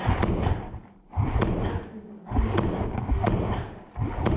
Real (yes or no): yes